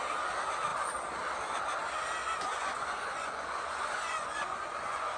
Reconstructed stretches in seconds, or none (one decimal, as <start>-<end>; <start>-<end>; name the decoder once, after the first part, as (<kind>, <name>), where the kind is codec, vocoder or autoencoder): 2.2-5.2 (vocoder, Vocos)

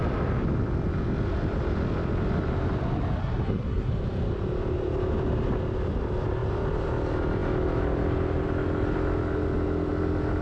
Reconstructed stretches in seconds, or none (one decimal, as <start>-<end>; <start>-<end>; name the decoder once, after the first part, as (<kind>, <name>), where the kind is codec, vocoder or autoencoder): 3.2-3.9 (codec, SNAC)